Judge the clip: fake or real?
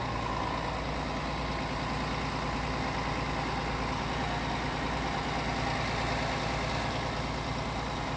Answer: real